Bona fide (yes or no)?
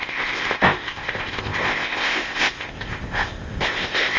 no